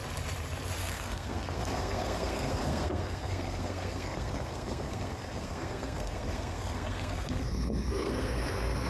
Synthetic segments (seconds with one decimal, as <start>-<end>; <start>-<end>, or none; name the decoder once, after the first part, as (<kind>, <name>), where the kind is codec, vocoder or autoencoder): 0.8-8.9 (codec, SNAC)